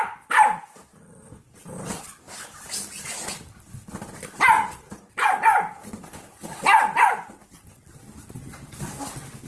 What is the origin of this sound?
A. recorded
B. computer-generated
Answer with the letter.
A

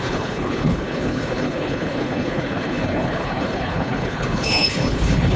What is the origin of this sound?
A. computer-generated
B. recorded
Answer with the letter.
A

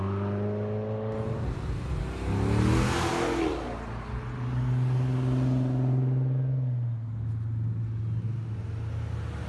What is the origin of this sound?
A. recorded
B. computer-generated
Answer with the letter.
A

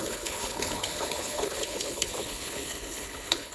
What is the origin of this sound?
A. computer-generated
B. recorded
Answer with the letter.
A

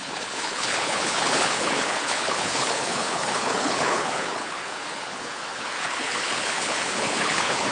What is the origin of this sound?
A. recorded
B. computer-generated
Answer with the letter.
B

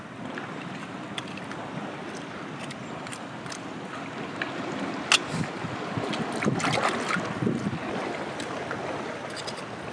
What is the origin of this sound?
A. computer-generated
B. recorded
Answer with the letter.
B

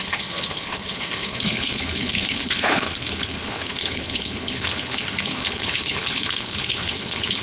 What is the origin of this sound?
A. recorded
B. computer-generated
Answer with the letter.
B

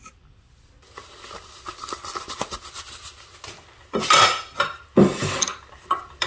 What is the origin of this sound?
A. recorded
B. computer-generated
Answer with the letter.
A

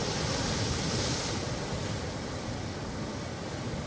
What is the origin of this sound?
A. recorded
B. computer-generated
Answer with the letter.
A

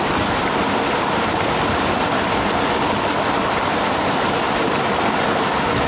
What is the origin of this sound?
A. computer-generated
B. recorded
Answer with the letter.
B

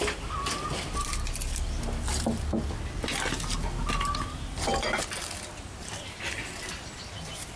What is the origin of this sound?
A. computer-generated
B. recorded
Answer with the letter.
B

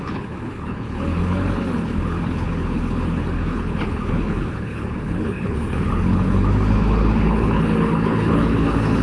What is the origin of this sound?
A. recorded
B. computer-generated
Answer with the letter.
B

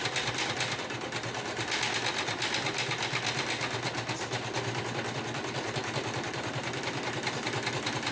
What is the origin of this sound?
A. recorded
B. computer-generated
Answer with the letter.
A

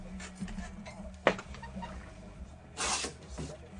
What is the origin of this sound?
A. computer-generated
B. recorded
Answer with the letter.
B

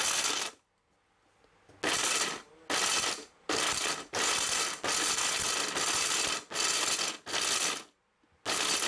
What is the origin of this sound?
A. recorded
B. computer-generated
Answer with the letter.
A